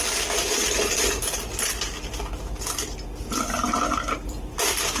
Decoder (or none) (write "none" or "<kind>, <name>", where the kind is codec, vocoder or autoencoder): none